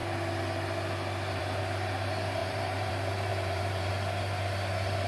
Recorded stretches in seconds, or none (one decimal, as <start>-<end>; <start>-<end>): 0.0-2.4; 2.9-3.3; 3.9-5.1